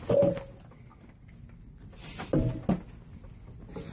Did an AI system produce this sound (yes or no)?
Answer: no